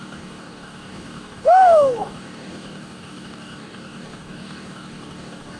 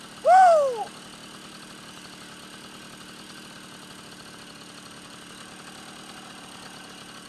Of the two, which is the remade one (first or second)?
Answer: first